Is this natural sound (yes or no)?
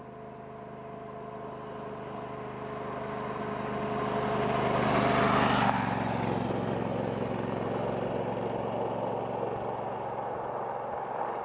yes